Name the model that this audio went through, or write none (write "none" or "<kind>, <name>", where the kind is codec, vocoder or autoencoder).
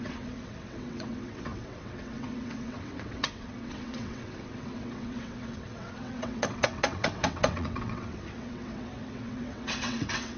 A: vocoder, WaveNeXt